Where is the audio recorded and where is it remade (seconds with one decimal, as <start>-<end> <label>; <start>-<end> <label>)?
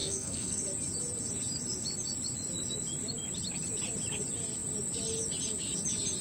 0.0-0.6 remade; 0.6-6.2 recorded